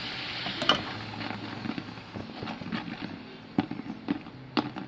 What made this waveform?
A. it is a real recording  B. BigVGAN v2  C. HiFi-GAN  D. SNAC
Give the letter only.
A